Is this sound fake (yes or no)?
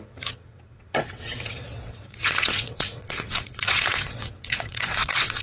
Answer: yes